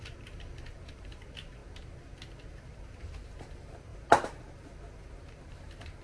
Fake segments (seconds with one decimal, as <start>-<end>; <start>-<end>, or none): 0.0-1.6; 2.6-6.0